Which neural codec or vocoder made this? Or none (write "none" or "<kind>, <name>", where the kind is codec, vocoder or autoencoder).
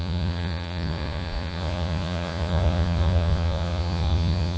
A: vocoder, Vocos